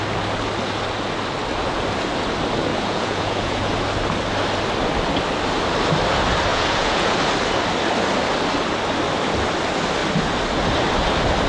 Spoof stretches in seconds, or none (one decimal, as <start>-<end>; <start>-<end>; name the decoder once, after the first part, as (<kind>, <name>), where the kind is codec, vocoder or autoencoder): 2.7-3.7 (vocoder, Vocos); 6.5-7.2